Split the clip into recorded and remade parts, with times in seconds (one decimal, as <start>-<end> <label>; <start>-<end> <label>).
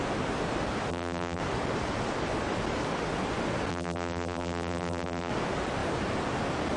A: 0.0-0.9 recorded; 0.9-1.4 remade; 1.4-3.7 recorded; 3.7-5.3 remade; 5.3-6.8 recorded